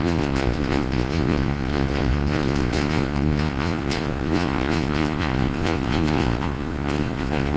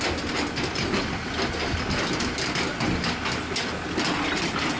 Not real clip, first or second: first